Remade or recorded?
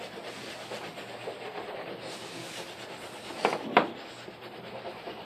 recorded